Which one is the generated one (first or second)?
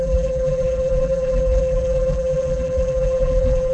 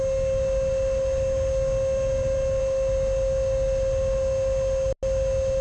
first